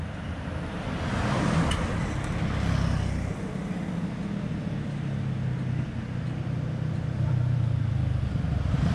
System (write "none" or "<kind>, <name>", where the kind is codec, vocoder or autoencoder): none